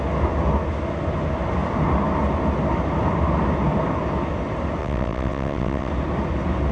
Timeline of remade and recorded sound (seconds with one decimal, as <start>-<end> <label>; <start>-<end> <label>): 0.0-4.8 recorded; 4.8-5.9 remade; 5.9-6.7 recorded